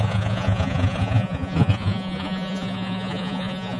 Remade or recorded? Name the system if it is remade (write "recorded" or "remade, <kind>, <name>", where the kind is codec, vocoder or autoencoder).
remade, vocoder, Vocos